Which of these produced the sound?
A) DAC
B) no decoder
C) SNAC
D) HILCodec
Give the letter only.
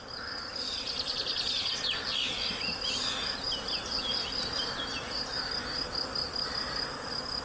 B